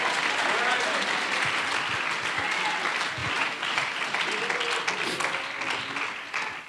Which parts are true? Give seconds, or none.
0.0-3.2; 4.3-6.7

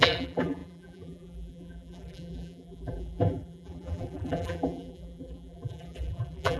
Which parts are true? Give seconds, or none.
none

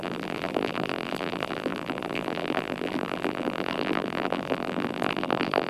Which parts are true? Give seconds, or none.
none

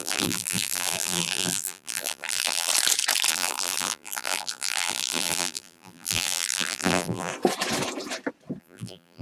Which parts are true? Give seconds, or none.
2.7-3.3; 7.3-8.6

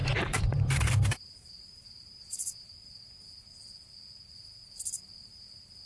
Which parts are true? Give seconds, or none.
3.0-5.9

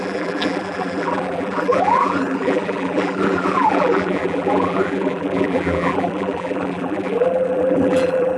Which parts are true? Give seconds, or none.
none

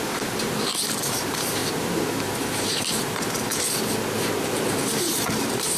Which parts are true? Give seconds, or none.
3.5-4.8

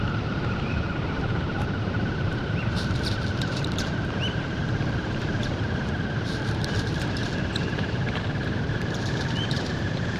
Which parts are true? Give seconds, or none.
7.2-7.7